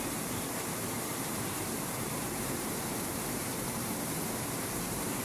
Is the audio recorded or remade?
remade